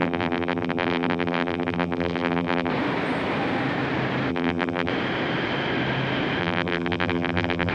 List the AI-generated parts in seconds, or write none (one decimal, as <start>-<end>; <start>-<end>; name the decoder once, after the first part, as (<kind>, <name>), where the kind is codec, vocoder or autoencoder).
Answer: 0.0-2.7 (vocoder, BigVGAN v2); 4.3-4.9; 6.4-7.7